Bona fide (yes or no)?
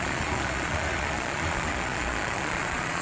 no